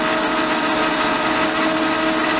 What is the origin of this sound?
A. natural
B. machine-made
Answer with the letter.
A